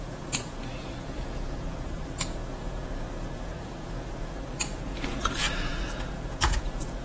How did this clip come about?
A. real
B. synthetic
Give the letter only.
B